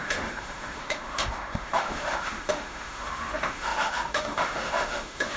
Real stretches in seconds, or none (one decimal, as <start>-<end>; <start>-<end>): none